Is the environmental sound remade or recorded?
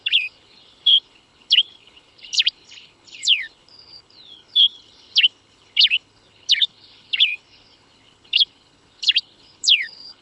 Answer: remade